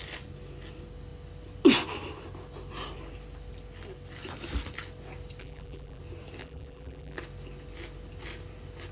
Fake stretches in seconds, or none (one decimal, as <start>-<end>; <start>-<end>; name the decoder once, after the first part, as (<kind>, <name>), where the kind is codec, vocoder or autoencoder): 5.4-6.0 (vocoder, BigVGAN v2); 6.4-7.2